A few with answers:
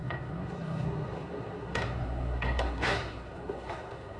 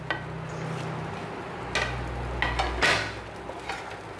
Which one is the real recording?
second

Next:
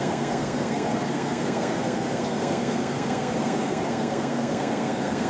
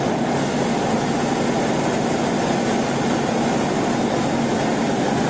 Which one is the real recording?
second